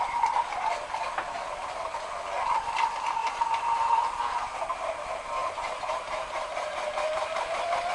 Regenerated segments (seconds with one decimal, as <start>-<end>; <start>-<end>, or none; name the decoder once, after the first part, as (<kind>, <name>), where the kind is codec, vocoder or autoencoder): 3.2-4.4 (vocoder, BigVGAN v2); 5.4-7.9